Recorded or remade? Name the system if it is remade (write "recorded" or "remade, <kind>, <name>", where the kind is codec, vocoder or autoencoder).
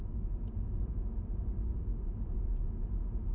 remade, vocoder, Vocos